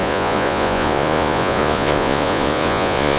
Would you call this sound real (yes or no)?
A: no